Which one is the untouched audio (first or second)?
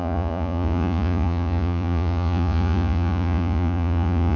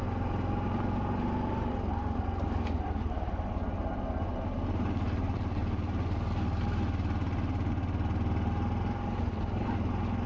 second